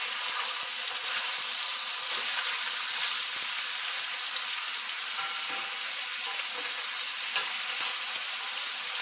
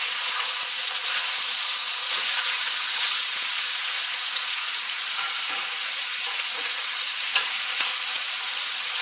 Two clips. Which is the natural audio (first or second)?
first